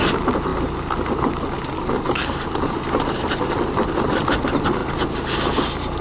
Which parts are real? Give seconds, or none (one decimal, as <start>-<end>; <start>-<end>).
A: 0.0-2.2; 2.8-6.0